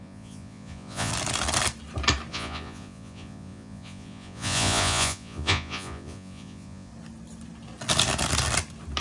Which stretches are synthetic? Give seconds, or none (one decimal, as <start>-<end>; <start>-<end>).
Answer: 0.0-1.1; 2.3-6.9